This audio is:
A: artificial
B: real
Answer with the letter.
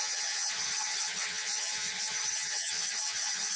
A